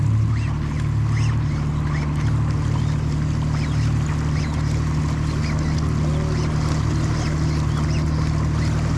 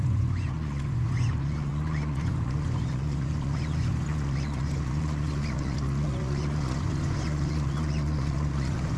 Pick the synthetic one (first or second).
second